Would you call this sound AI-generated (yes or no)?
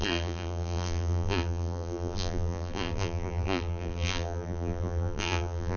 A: yes